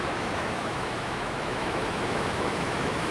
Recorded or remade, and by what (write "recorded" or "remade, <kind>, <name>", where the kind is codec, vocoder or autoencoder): remade, autoencoder, DAC-VAE